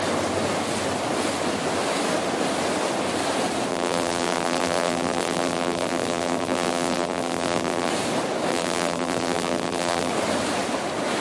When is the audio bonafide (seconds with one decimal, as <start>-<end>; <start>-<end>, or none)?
0.0-3.7; 7.9-8.5; 10.1-11.2